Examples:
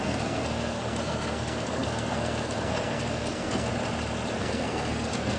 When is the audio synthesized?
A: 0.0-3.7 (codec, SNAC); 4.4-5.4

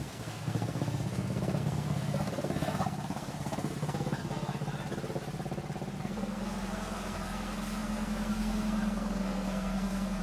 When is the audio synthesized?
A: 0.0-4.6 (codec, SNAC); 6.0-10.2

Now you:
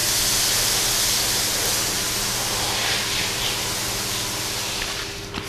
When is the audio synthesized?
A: none